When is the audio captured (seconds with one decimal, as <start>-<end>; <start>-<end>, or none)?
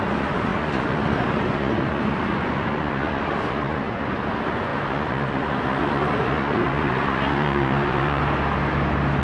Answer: 8.2-9.2